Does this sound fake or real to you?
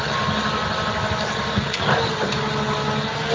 real